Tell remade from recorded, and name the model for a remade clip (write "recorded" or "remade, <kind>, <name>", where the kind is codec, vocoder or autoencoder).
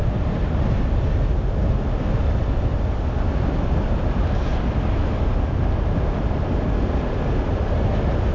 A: recorded